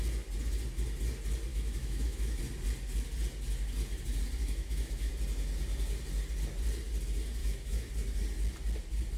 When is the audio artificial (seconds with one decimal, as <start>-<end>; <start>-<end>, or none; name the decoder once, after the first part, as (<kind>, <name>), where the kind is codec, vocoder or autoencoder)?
1.5-2.4 (autoencoder, DAC-VAE); 4.4-5.1; 7.4-7.9